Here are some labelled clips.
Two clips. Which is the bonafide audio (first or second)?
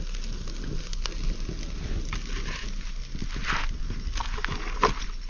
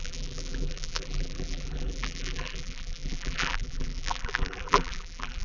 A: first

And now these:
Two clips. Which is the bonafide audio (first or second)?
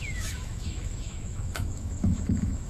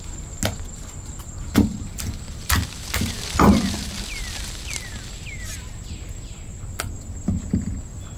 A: second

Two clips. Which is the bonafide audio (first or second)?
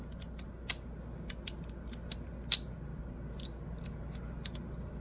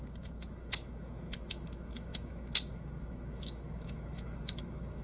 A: first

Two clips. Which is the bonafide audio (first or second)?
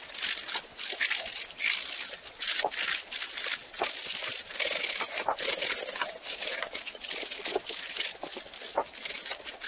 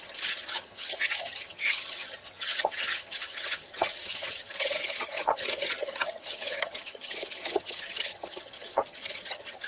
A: first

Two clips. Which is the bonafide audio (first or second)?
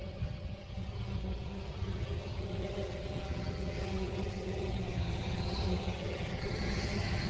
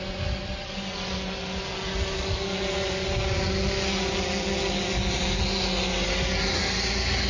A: second